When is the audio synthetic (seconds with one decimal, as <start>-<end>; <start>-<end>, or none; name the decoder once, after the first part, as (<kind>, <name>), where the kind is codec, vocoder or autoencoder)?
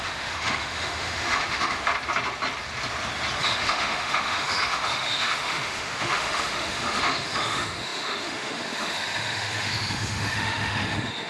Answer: 0.0-1.9 (autoencoder, DAC-VAE); 3.4-11.3